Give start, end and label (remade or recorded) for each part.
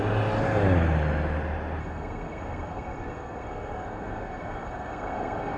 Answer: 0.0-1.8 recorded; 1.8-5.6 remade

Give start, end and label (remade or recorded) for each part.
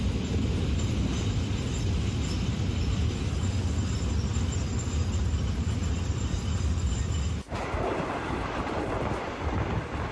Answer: 0.0-5.8 recorded; 5.8-7.1 remade; 7.1-10.1 recorded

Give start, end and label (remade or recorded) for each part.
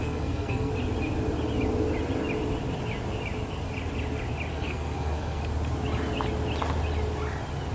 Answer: 0.0-0.7 remade; 0.7-4.5 recorded; 4.5-5.4 remade; 5.4-7.7 recorded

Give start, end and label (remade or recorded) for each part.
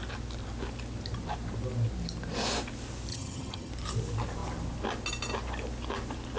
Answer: 0.0-3.1 recorded; 3.1-3.7 remade; 3.7-6.4 recorded